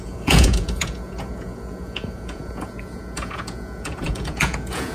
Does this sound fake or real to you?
fake